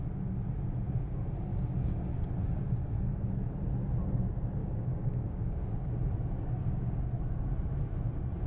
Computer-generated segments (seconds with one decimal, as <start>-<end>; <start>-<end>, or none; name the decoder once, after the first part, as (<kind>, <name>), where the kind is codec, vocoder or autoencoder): 1.5-2.2 (codec, DAC); 4.6-5.7